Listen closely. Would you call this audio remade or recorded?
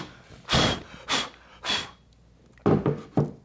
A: recorded